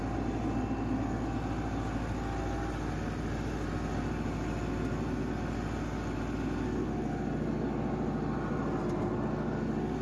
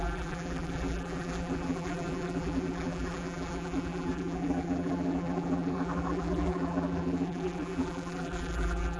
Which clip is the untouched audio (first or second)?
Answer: first